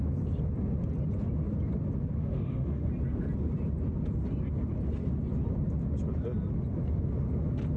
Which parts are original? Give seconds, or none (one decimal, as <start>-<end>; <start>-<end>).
0.0-2.2; 2.9-7.8